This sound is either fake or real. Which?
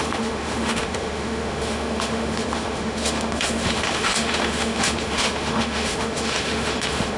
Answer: fake